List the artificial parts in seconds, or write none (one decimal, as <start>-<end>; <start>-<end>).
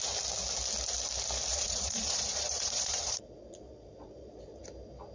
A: 1.5-4.6